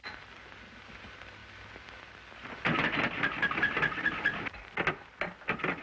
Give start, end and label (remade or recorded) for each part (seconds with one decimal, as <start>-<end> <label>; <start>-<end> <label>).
0.0-5.8 recorded